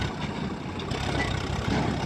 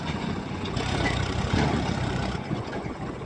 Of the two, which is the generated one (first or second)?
second